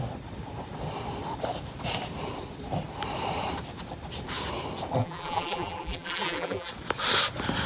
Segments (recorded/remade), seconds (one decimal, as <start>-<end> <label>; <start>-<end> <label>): 0.0-5.0 recorded; 5.0-6.7 remade; 6.7-7.7 recorded